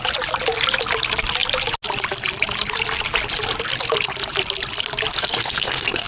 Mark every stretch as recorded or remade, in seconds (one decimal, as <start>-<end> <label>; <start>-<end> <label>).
0.0-5.1 recorded; 5.1-6.1 remade